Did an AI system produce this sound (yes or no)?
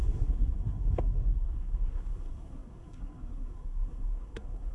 yes